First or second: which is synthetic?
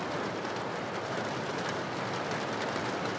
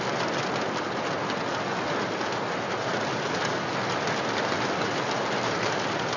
first